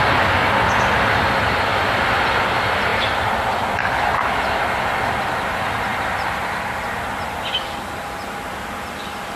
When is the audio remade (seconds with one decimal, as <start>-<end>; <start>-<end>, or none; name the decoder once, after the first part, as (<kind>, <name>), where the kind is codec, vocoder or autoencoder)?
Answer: none